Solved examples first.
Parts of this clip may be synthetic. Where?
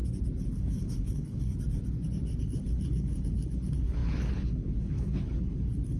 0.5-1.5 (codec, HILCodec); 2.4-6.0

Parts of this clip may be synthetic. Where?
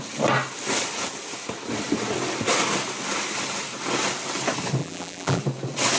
4.8-5.4 (vocoder, BigVGAN v2)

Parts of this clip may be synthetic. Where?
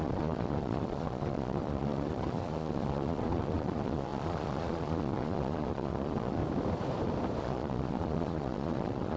0.0-6.4 (vocoder, Vocos); 7.4-9.2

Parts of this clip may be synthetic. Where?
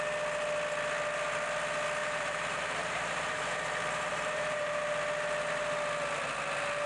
2.0-3.5 (vocoder, BigVGAN v2); 4.1-4.8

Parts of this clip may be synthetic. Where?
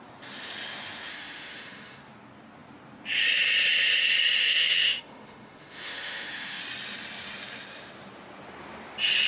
1.1-2.0 (autoencoder, DAC-VAE); 4.5-6.6